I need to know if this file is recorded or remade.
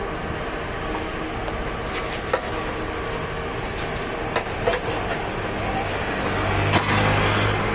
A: recorded